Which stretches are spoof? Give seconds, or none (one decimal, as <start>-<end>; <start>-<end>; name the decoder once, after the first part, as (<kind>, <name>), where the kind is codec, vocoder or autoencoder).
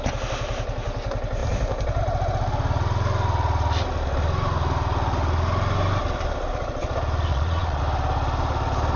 7.3-7.8 (vocoder, Vocos)